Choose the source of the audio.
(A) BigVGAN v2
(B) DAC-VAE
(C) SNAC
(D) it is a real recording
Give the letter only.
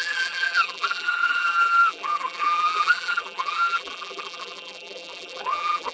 A